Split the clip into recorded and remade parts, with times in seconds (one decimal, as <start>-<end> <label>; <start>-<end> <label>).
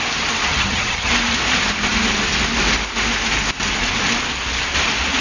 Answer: 0.0-0.5 recorded; 0.5-1.1 remade; 1.1-5.2 recorded